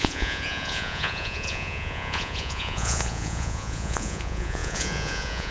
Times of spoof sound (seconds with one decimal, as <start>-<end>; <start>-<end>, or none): 0.0-5.5